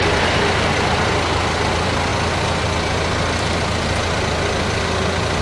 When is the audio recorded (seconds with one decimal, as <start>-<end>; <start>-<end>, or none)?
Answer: 0.0-5.4